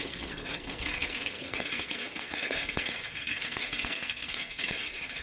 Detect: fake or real fake